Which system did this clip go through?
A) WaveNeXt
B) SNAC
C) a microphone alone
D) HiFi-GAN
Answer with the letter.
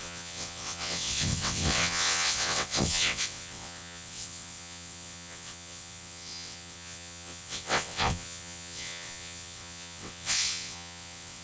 A